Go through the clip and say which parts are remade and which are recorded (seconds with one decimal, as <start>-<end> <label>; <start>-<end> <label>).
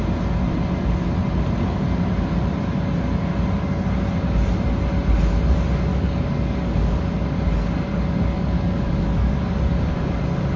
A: 0.0-5.9 recorded; 5.9-7.4 remade; 7.4-7.9 recorded; 7.9-10.2 remade; 10.2-10.6 recorded